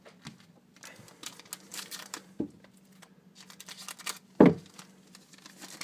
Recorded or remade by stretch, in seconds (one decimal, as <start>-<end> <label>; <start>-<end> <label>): 0.0-1.7 recorded; 1.7-2.4 remade; 2.4-5.8 recorded